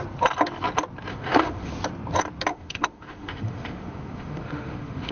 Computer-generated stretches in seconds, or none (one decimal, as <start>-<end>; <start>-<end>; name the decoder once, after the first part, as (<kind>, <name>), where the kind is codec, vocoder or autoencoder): 1.1-1.7 (autoencoder, DAC-VAE); 2.5-5.1